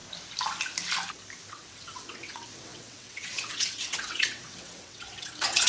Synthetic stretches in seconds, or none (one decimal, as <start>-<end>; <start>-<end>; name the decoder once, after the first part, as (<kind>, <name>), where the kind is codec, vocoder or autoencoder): 1.5-5.7 (vocoder, WaveNeXt)